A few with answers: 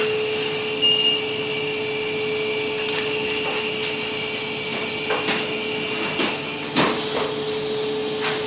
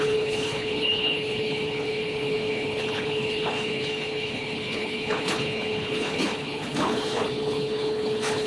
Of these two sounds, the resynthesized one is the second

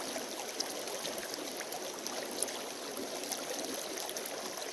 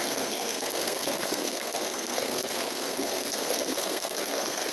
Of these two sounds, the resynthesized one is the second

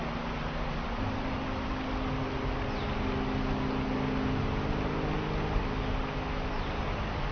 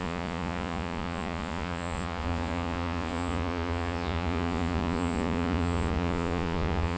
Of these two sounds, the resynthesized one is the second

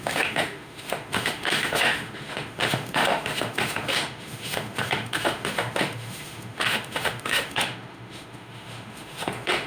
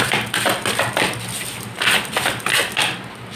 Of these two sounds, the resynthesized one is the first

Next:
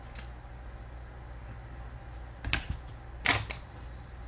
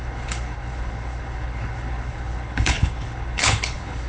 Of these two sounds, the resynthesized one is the second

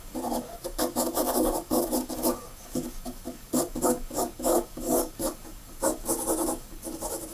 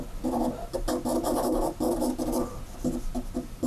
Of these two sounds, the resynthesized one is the first